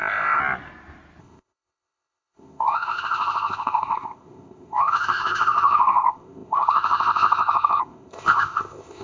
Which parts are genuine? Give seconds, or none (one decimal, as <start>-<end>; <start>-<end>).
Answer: 0.4-1.2